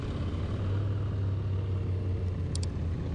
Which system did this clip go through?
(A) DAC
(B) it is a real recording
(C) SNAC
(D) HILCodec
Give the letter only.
B